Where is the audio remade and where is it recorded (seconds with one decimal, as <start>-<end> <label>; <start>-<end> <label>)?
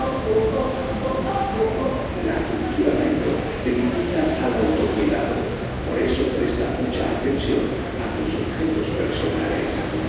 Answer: 0.0-10.1 recorded